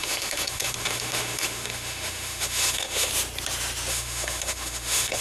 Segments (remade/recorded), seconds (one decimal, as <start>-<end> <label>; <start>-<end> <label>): 0.0-3.1 remade; 3.1-3.9 recorded; 3.9-5.2 remade